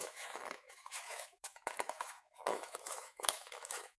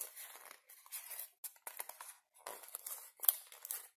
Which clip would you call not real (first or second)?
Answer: first